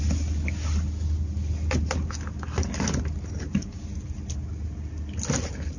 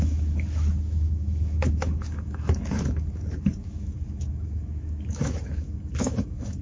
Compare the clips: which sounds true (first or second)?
first